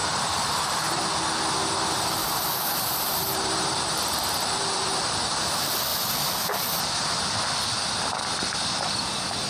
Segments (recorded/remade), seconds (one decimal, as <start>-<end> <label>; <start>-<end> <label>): 0.0-1.0 remade; 1.0-2.2 recorded; 2.2-5.4 remade; 5.4-5.9 recorded; 5.9-7.3 remade; 7.3-9.5 recorded